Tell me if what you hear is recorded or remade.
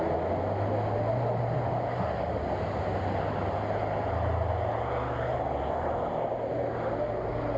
recorded